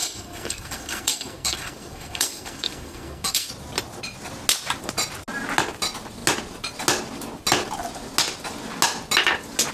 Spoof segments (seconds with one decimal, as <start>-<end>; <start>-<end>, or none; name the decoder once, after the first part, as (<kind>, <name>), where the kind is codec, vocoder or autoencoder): 0.0-3.5 (codec, SNAC)